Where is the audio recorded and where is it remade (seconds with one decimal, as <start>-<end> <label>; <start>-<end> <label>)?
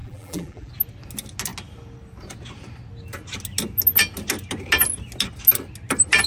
0.0-0.7 remade; 0.7-6.3 recorded